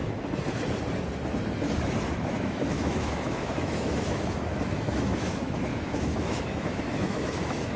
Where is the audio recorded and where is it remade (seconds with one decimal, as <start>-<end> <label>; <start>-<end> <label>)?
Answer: 0.0-2.1 recorded; 2.1-7.8 remade